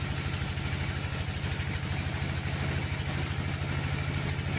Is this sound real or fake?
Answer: real